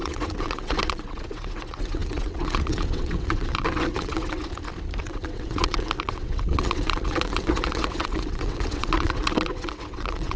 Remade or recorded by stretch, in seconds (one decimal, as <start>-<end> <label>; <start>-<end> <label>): 0.0-4.4 remade; 4.4-5.0 recorded; 5.0-10.4 remade